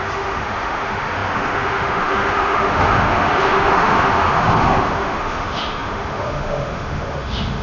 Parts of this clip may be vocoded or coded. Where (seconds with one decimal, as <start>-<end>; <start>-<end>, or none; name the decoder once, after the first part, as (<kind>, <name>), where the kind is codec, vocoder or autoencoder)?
0.0-7.6 (autoencoder, DAC-VAE)